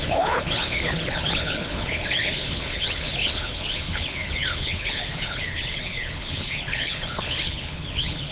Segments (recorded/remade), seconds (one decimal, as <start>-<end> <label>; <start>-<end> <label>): 0.0-8.3 remade